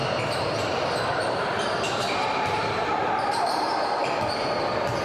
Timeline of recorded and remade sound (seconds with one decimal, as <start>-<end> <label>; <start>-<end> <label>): 0.0-0.5 remade; 0.5-1.2 recorded; 1.2-4.2 remade; 4.2-5.0 recorded